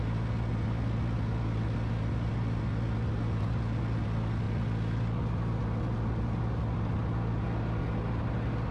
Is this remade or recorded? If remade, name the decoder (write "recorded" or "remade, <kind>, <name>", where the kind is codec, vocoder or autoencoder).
recorded